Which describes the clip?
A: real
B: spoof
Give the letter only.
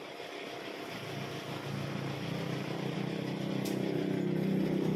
A